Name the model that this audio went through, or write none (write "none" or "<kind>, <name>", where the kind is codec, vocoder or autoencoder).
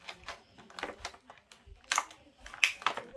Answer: none